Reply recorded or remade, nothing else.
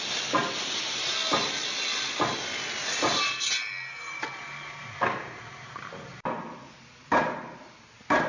recorded